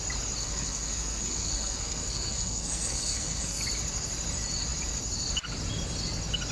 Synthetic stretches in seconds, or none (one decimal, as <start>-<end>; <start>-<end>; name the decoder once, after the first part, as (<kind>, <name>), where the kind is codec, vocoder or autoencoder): 0.4-3.6 (codec, SNAC)